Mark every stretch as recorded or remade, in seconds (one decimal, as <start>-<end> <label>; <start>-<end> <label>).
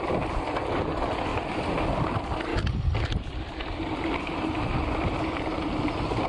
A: 0.0-1.3 recorded; 1.3-2.1 remade; 2.1-2.5 recorded; 2.5-5.7 remade; 5.7-6.3 recorded